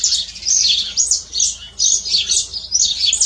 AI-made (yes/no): no